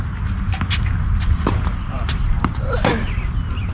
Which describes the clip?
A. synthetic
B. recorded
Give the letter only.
B